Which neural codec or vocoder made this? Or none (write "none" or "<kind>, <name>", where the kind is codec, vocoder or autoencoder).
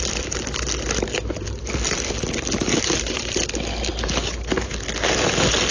none